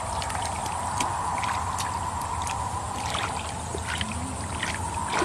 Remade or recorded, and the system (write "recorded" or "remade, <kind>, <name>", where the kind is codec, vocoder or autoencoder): recorded